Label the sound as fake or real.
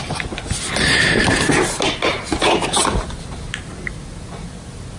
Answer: real